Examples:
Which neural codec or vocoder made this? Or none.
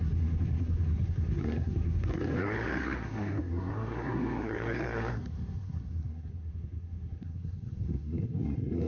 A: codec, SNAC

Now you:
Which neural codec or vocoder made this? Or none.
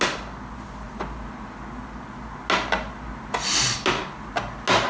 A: none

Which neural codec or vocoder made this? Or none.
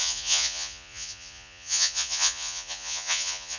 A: vocoder, Vocos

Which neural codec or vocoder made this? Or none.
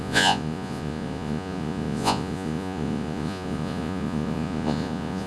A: vocoder, Vocos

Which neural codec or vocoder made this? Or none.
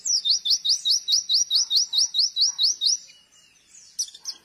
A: none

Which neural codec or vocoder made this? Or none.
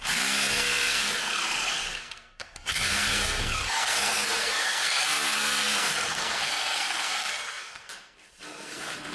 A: codec, SNAC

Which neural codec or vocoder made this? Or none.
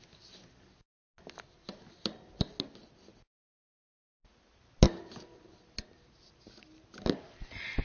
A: none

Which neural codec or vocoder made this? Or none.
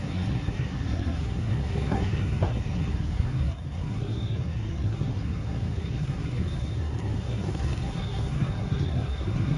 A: codec, SNAC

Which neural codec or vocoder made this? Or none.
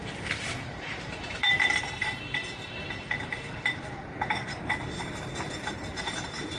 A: vocoder, BigVGAN v2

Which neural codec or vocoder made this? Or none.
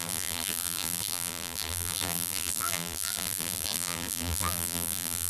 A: vocoder, BigVGAN v2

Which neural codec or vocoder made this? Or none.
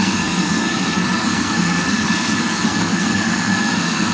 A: codec, SNAC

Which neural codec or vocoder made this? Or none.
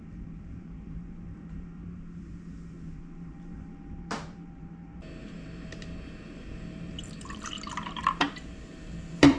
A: vocoder, BigVGAN v2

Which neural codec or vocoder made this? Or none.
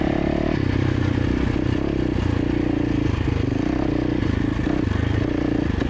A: none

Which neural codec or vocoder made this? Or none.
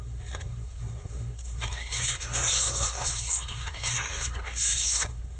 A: codec, SNAC